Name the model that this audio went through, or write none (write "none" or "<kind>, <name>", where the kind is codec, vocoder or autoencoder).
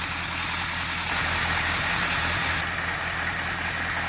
none